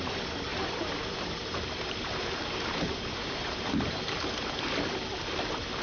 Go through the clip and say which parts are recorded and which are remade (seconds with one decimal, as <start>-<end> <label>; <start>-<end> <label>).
0.0-0.5 recorded; 0.5-4.0 remade; 4.0-5.8 recorded